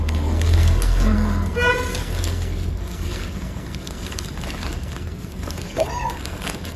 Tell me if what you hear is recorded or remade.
remade